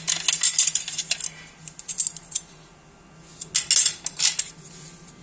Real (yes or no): yes